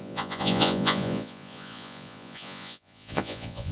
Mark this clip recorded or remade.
remade